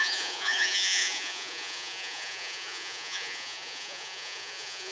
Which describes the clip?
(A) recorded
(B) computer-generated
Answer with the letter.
B